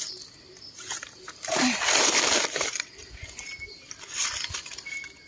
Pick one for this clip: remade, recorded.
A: recorded